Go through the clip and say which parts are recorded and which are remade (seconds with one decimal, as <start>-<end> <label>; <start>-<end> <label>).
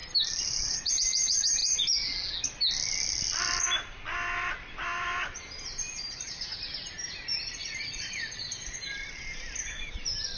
0.0-1.6 remade; 1.6-4.7 recorded; 4.7-10.4 remade